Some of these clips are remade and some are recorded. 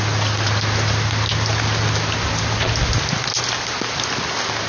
recorded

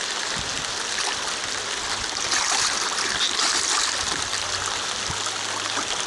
recorded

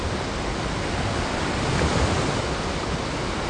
recorded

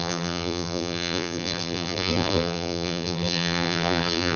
remade